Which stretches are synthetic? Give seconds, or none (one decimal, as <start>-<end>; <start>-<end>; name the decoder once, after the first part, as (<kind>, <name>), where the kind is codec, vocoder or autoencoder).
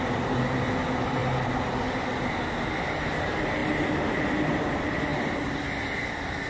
none